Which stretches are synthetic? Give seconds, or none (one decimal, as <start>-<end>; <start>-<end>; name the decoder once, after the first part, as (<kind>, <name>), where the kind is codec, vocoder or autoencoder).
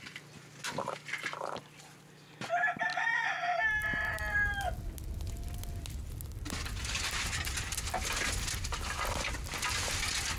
none